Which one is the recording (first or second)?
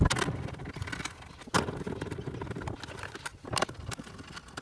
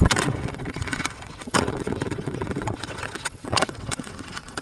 first